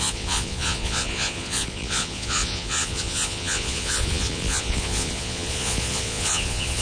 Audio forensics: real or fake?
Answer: fake